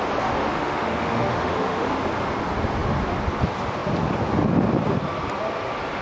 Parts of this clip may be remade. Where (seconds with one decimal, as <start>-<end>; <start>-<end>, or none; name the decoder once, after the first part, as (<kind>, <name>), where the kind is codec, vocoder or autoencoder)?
0.6-1.9 (autoencoder, DAC-VAE)